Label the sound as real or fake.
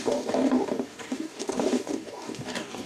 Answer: fake